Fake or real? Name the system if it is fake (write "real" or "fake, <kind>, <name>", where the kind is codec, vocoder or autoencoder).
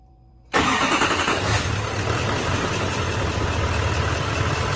fake, vocoder, BigVGAN v2